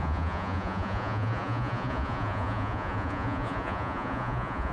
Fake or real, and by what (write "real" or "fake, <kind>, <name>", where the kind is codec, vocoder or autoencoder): fake, vocoder, Vocos